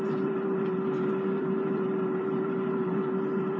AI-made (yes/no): yes